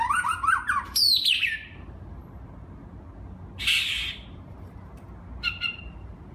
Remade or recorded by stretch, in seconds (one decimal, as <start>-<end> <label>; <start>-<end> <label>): 0.0-2.2 remade; 2.2-4.3 recorded; 4.3-4.9 remade; 4.9-5.8 recorded; 5.8-6.3 remade